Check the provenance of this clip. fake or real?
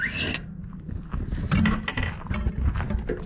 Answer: real